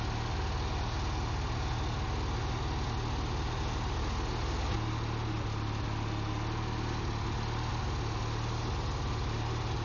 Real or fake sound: real